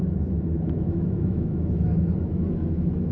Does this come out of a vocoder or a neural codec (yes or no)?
yes